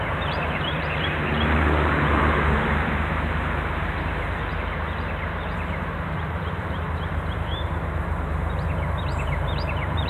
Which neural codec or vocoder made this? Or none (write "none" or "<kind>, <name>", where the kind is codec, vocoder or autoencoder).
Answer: vocoder, BigVGAN v2